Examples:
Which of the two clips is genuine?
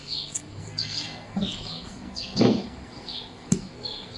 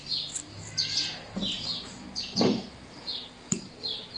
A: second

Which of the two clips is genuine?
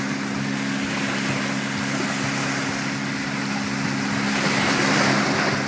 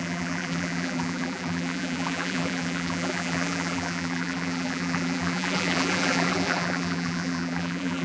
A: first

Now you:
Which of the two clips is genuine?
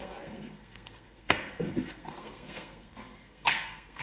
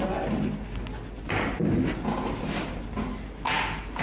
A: second